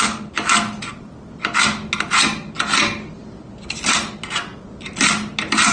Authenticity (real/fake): real